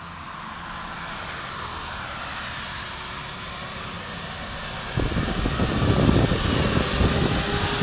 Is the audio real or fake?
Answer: real